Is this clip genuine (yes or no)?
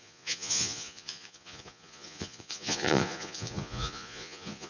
no